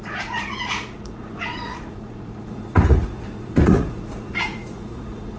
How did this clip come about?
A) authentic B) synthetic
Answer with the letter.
B